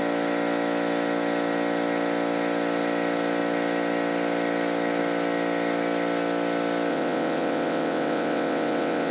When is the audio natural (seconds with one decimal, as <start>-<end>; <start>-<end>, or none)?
0.0-6.9